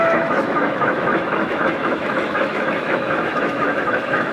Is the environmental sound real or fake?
fake